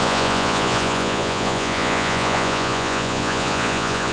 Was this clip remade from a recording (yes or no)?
yes